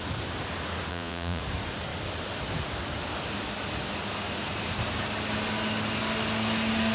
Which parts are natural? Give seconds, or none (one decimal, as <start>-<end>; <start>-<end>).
0.0-0.9; 1.4-6.9